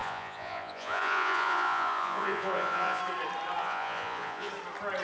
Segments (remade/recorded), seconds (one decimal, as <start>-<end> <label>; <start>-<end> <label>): 0.0-3.0 remade; 3.0-3.6 recorded; 3.6-4.5 remade; 4.5-5.0 recorded